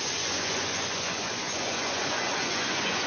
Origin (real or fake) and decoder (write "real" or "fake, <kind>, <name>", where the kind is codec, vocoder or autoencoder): fake, vocoder, Vocos